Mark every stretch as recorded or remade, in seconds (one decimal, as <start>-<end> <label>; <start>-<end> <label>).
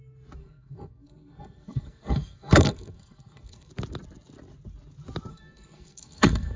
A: 0.0-0.4 recorded; 0.4-3.7 remade; 3.7-5.3 recorded; 5.3-6.6 remade